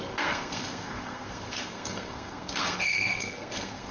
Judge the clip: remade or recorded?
remade